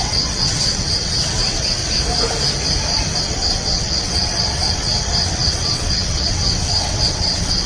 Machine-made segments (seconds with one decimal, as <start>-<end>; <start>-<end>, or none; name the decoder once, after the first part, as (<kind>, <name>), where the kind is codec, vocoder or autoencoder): 0.0-1.8 (vocoder, WaveNeXt); 3.2-7.7